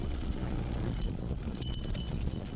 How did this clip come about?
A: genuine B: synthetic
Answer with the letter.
B